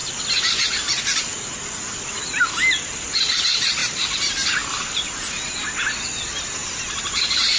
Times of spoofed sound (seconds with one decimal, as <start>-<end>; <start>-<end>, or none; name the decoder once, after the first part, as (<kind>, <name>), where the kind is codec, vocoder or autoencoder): 3.8-4.3 (vocoder, BigVGAN v2); 6.6-7.6